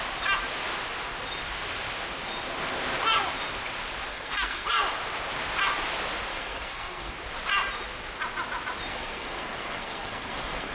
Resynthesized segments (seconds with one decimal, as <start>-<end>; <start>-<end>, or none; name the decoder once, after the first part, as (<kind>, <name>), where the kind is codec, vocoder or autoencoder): 4.1-4.7 (codec, SNAC); 6.3-7.1; 8.9-10.7